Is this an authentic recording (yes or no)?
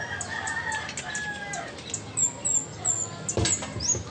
yes